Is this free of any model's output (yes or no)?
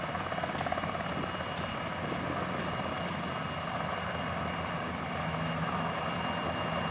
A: yes